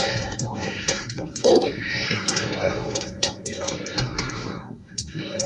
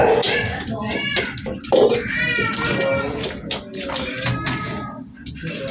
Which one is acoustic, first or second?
second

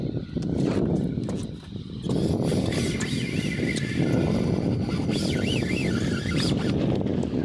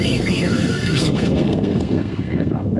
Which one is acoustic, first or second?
first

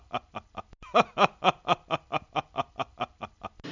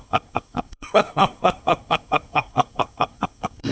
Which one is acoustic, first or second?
first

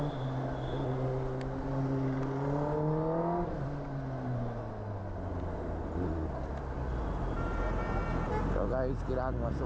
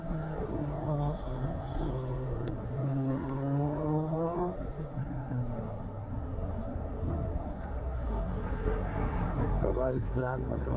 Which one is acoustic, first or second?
first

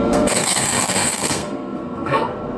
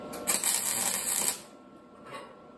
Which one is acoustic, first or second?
second